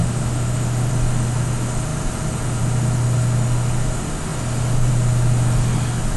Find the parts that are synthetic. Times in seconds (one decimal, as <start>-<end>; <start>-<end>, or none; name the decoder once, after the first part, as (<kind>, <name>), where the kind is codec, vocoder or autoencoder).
0.0-0.9 (autoencoder, DAC-VAE)